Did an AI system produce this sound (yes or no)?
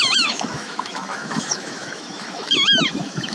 yes